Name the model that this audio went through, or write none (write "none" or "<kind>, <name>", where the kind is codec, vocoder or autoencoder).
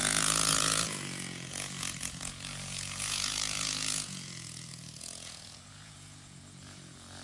vocoder, Vocos